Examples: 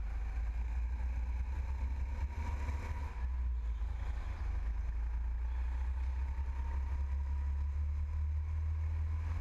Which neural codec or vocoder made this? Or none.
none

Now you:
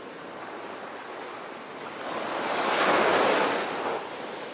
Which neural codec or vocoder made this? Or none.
none